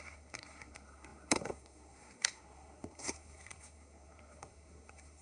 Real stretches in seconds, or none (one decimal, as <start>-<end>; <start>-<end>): none